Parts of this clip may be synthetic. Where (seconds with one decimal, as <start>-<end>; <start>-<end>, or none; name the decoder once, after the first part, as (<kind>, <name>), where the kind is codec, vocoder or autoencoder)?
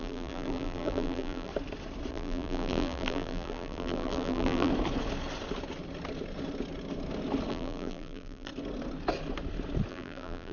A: 0.0-1.5 (vocoder, BigVGAN v2); 2.1-4.7; 7.5-8.5; 9.9-10.5